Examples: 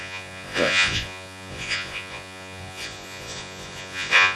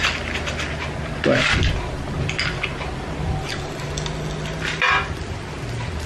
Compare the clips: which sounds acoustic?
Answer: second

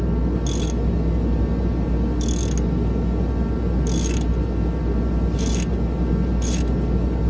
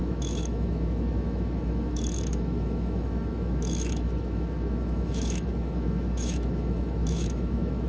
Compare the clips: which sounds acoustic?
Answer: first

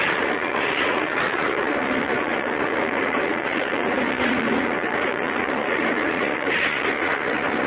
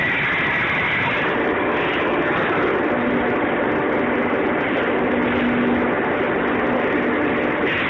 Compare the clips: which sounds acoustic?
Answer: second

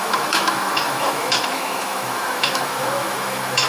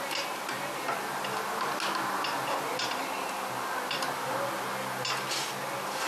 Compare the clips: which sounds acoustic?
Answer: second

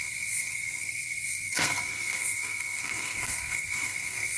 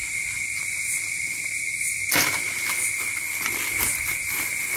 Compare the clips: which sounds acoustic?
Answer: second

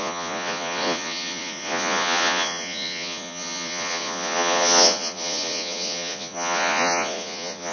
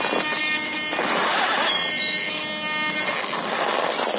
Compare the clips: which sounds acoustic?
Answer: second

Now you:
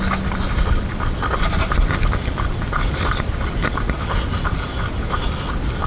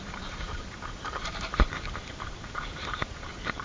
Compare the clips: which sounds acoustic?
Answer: first